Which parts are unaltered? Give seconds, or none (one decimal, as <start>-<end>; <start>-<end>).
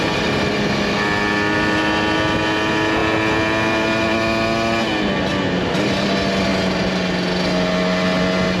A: 0.0-8.6